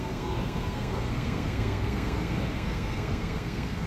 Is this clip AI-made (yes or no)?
yes